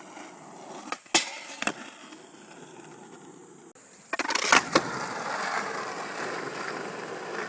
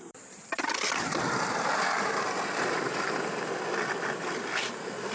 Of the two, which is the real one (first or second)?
first